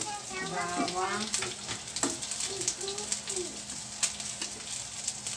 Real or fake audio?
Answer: real